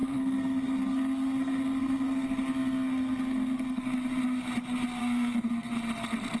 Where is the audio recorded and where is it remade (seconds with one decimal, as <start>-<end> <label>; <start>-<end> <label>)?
0.0-3.8 remade; 3.8-5.0 recorded; 5.0-5.7 remade; 5.7-6.4 recorded